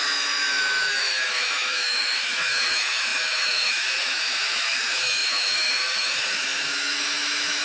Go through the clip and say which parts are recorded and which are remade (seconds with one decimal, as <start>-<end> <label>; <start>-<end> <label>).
0.0-7.6 remade